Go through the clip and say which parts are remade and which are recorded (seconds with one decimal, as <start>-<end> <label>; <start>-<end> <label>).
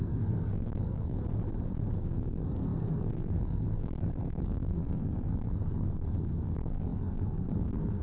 0.0-1.2 remade; 1.2-1.9 recorded; 1.9-8.0 remade